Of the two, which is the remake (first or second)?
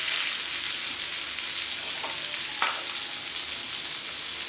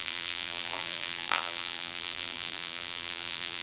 second